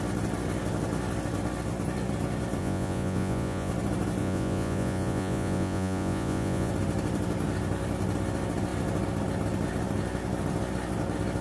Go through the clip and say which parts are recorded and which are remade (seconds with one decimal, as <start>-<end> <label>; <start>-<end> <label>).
0.0-2.6 recorded; 2.6-3.7 remade; 3.7-4.2 recorded; 4.2-6.7 remade; 6.7-11.4 recorded